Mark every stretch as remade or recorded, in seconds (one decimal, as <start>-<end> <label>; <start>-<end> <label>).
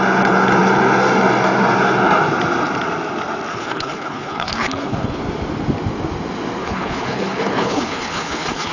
0.0-3.5 recorded; 3.5-5.2 remade; 5.2-6.6 recorded; 6.6-8.7 remade